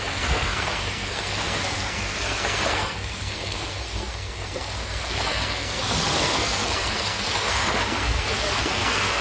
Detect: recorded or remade remade